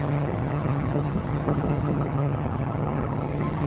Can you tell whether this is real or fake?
fake